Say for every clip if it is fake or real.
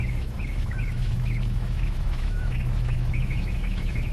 fake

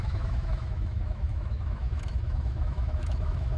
fake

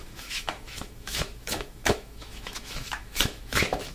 fake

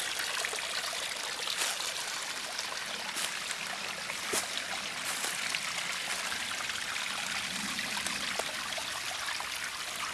real